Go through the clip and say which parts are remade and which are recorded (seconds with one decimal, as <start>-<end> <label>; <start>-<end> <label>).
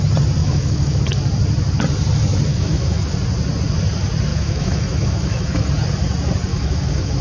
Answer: 0.0-0.4 recorded; 0.4-1.0 remade; 1.0-2.5 recorded; 2.5-3.1 remade; 3.1-4.3 recorded; 4.3-5.7 remade; 5.7-6.5 recorded; 6.5-7.2 remade